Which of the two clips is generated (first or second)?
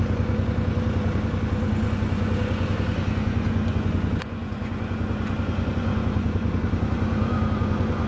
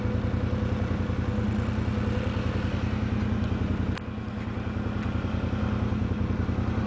first